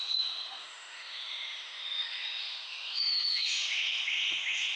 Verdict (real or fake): fake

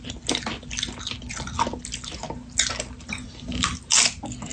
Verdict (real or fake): real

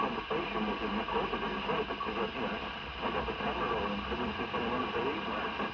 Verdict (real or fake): real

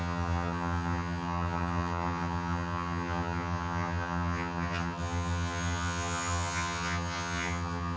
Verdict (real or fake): fake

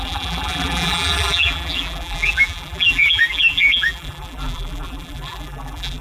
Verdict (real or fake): fake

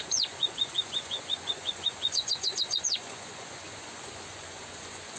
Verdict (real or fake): fake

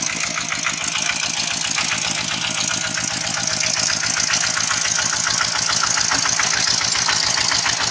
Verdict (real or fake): real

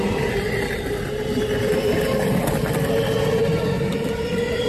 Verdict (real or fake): real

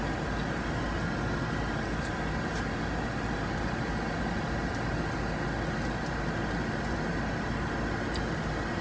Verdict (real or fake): real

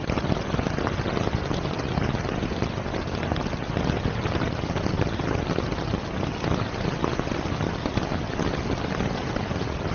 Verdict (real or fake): real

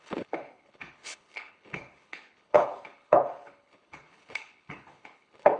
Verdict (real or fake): fake